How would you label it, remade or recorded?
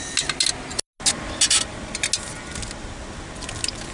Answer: recorded